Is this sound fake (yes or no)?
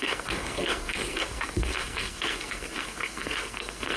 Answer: yes